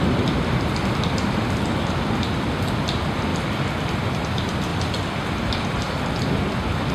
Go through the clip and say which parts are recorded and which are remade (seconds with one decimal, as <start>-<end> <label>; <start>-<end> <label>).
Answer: 0.0-3.3 recorded; 3.3-4.3 remade; 4.3-4.7 recorded; 4.7-5.8 remade; 5.8-6.9 recorded